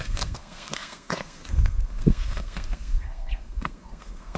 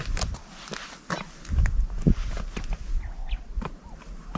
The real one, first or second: second